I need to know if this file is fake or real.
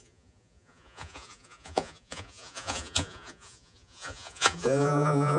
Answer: fake